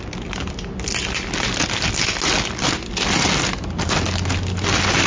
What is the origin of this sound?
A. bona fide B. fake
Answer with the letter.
A